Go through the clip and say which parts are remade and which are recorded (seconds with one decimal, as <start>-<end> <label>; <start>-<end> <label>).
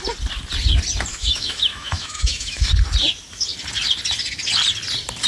0.0-1.1 recorded; 1.1-2.7 remade; 2.7-5.3 recorded